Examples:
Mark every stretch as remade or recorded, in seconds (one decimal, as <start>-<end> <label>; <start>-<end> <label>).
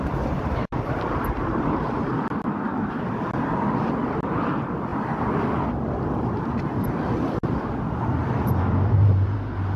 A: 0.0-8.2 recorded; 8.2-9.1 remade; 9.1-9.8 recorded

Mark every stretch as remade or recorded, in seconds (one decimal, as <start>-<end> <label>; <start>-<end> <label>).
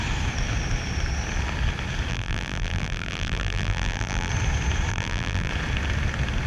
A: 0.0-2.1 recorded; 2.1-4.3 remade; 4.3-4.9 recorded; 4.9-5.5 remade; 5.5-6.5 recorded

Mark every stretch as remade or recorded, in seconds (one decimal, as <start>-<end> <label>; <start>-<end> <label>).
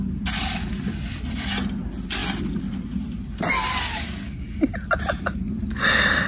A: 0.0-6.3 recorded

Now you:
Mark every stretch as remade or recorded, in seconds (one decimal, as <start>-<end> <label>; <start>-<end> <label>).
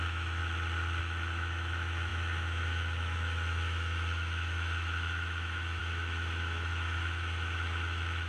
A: 0.0-0.4 remade; 0.4-1.0 recorded; 1.0-8.3 remade